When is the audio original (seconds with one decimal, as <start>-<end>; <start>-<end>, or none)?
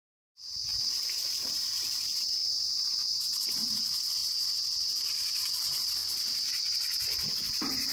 4.2-5.1; 6.0-7.3